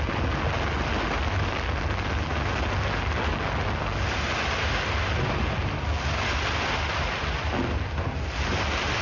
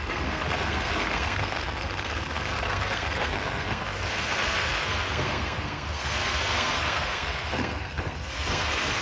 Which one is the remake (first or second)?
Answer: second